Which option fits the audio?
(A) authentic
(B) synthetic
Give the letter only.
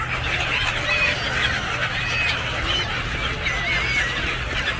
A